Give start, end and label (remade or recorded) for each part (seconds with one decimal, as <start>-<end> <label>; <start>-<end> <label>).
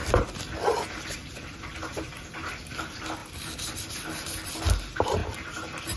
0.0-5.2 recorded; 5.2-6.0 remade